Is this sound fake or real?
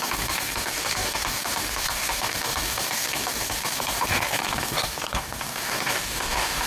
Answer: fake